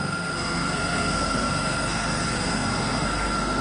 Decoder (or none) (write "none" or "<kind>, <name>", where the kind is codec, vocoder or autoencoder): codec, SNAC